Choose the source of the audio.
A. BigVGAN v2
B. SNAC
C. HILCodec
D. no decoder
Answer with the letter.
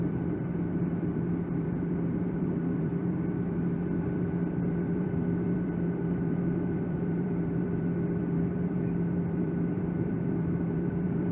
A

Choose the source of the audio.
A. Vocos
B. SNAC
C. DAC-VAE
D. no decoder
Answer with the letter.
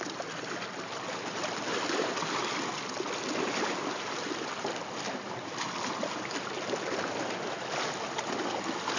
D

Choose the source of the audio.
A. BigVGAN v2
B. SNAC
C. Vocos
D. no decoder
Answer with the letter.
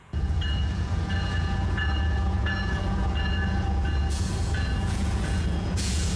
C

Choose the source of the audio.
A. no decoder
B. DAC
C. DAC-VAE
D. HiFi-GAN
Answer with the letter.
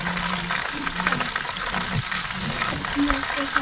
A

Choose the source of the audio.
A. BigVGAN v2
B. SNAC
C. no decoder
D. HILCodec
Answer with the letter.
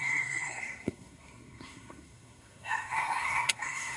B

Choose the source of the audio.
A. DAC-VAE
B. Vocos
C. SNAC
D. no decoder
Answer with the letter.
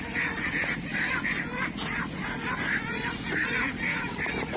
B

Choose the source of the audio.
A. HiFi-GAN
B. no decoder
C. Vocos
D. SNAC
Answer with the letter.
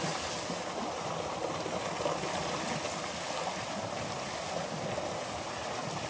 B